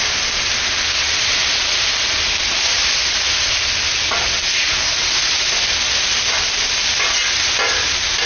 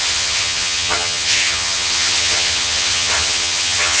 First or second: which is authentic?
first